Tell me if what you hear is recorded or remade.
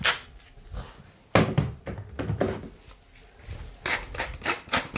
recorded